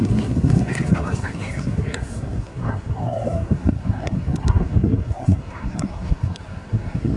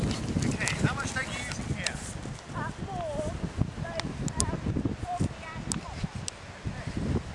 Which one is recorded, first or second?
second